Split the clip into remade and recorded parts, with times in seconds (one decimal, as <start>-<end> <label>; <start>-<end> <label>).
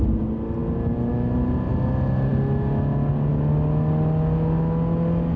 0.0-5.4 recorded